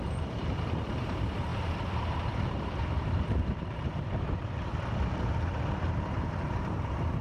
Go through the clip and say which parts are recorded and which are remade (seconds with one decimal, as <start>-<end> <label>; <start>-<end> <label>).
0.0-1.5 remade; 1.5-2.1 recorded; 2.1-4.7 remade; 4.7-6.2 recorded; 6.2-7.2 remade